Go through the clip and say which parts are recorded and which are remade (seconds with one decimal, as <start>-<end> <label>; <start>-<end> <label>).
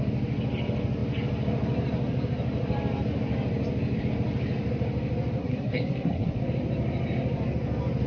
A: 0.0-5.4 recorded; 5.4-6.4 remade; 6.4-8.1 recorded